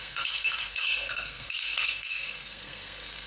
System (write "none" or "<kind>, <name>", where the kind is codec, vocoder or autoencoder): codec, SNAC